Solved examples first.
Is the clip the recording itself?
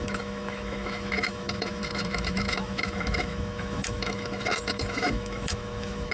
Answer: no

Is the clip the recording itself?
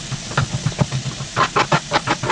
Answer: yes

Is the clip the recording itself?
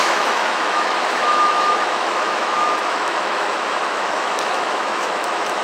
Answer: no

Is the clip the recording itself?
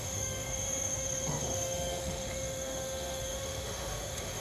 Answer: no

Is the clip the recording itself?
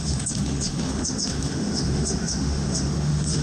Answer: no